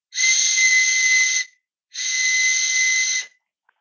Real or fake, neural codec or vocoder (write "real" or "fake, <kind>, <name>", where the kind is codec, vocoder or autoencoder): real